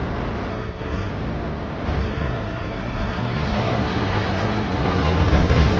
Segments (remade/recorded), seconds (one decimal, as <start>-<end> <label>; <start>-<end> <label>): 0.0-0.5 recorded; 0.5-1.1 remade; 1.1-2.0 recorded; 2.0-5.8 remade